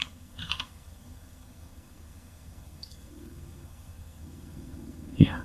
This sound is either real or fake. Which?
fake